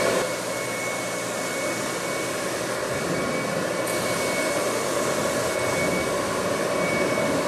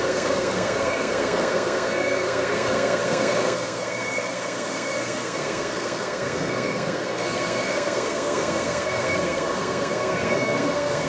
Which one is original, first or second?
first